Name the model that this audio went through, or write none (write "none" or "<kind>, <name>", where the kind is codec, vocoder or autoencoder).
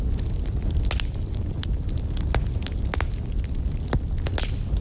none